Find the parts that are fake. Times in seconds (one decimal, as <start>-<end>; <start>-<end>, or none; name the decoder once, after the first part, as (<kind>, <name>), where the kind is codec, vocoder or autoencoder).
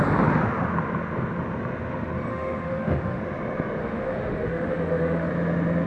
2.3-3.2 (autoencoder, DAC-VAE); 3.8-5.3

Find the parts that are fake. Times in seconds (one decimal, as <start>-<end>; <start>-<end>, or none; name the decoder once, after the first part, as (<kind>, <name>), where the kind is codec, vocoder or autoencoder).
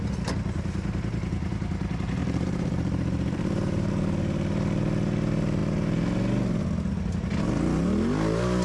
2.2-3.9 (vocoder, BigVGAN v2)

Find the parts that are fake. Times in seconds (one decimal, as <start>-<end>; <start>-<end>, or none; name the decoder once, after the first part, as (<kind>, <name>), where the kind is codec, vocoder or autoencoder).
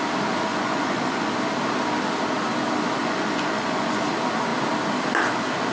0.5-1.3 (vocoder, Vocos); 3.0-4.0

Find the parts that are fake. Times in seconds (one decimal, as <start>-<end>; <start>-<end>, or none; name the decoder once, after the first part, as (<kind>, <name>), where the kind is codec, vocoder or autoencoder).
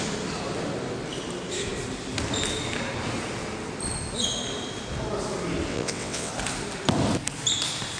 5.7-6.3 (vocoder, WaveNeXt)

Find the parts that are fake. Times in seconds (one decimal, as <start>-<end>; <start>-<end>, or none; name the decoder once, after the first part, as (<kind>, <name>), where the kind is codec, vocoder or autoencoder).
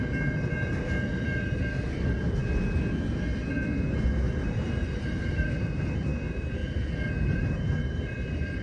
0.0-2.4 (vocoder, BigVGAN v2); 4.5-6.6; 7.4-8.6